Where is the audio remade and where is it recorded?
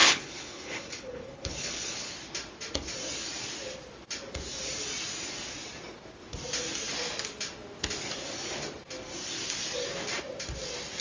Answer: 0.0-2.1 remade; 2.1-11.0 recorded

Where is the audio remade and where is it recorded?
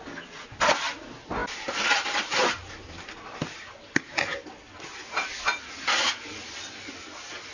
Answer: 0.0-7.5 recorded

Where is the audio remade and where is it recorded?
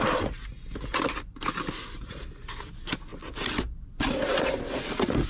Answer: 0.0-5.3 recorded